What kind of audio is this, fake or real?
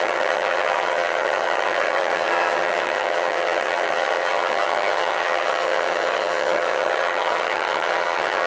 fake